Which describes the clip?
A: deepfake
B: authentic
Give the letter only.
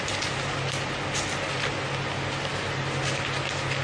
B